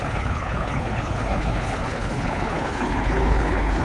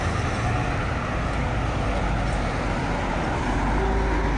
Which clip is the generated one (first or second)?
first